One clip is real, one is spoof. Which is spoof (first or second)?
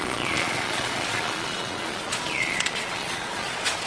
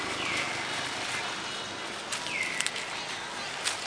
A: first